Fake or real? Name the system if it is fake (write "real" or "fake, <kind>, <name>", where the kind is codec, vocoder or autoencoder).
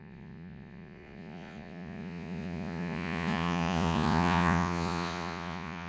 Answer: fake, vocoder, Vocos